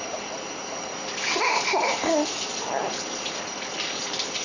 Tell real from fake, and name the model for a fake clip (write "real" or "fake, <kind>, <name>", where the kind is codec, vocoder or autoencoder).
real